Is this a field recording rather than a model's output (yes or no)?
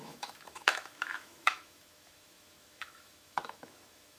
no